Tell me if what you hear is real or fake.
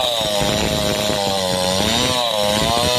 real